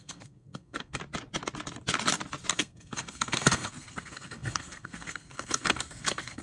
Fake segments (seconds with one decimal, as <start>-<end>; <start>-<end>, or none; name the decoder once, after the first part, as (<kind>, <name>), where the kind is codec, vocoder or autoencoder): 0.0-1.0 (codec, SNAC); 2.5-6.4